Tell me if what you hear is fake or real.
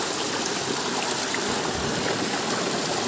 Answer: real